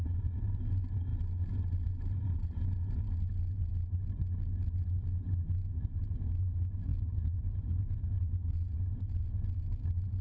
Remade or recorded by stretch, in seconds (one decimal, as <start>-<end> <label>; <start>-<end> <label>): 0.0-1.1 remade; 1.1-2.0 recorded; 2.0-3.7 remade; 3.7-6.4 recorded; 6.4-10.2 remade